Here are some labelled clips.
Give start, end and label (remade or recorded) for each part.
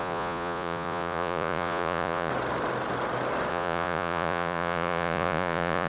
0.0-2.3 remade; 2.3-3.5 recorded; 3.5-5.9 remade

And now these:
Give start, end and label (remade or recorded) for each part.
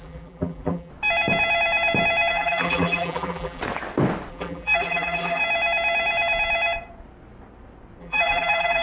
0.0-0.9 remade; 0.9-2.3 recorded; 2.3-3.6 remade; 3.6-4.3 recorded; 4.3-5.4 remade; 5.4-8.0 recorded; 8.0-8.8 remade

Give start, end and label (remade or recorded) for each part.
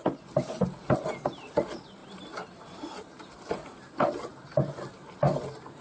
0.0-2.0 recorded; 2.0-2.6 remade; 2.6-5.8 recorded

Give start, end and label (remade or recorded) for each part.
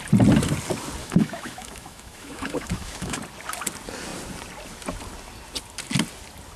0.0-1.0 recorded; 1.0-3.2 remade; 3.2-6.6 recorded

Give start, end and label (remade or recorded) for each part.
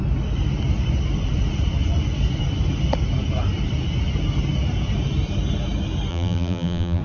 0.0-6.1 recorded; 6.1-7.0 remade